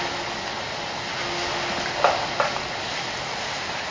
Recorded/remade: recorded